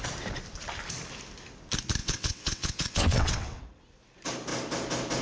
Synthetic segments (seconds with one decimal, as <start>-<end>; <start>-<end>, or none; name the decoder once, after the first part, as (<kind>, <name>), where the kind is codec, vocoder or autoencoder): 2.0-3.6 (vocoder, WaveNeXt)